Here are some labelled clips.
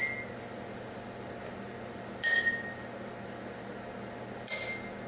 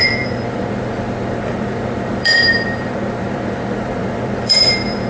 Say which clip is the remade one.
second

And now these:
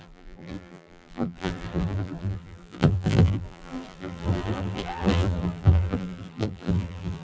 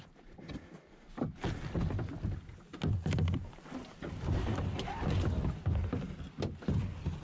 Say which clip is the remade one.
first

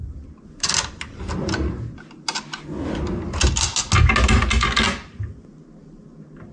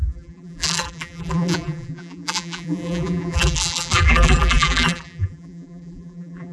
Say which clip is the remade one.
second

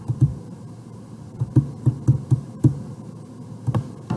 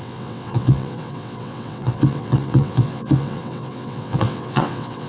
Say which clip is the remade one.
second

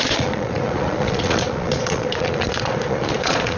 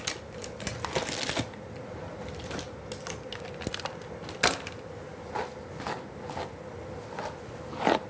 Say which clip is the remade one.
first